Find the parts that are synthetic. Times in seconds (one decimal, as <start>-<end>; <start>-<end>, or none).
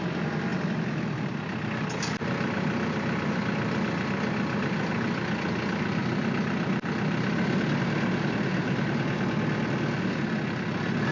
none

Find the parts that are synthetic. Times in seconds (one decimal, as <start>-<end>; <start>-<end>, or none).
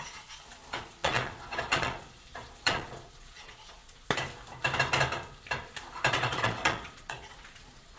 0.0-3.8; 6.1-8.0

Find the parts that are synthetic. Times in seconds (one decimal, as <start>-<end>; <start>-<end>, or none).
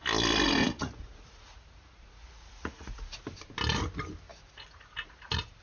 0.6-3.2; 4.3-5.6